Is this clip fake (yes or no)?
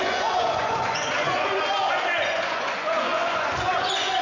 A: yes